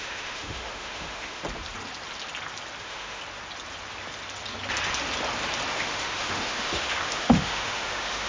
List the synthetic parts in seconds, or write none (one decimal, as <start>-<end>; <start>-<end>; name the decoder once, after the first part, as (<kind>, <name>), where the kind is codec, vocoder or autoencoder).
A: 0.0-1.4 (autoencoder, DAC-VAE); 2.8-3.2; 5.7-8.3